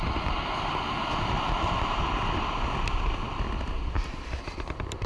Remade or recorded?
recorded